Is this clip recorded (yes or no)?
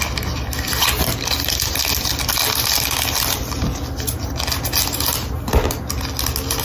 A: yes